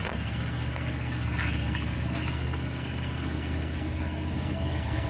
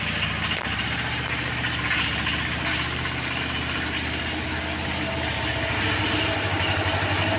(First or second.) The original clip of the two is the second